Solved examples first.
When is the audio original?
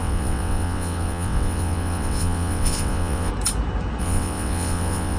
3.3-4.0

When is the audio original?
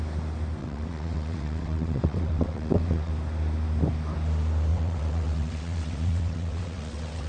0.0-0.6; 3.1-4.7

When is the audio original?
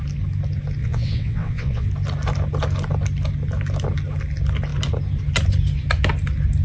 0.0-0.8; 1.9-6.6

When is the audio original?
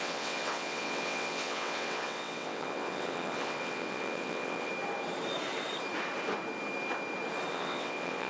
4.7-7.5